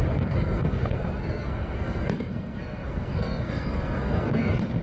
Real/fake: fake